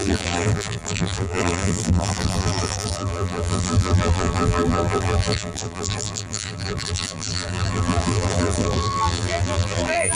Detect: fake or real fake